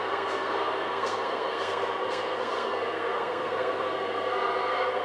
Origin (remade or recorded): remade